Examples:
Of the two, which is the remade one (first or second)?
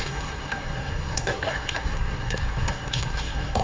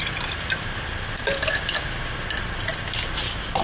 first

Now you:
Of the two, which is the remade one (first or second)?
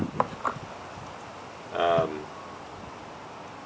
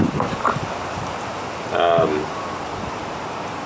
second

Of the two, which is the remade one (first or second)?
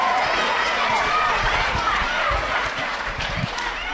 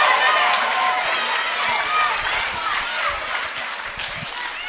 first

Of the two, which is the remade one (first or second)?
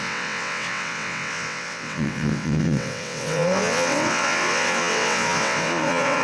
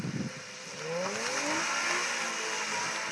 first